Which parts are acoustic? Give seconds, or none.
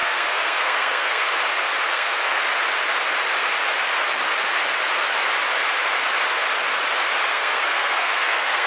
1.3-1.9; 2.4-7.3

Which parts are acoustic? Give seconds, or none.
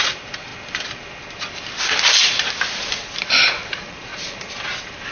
0.5-1.7; 4.1-5.1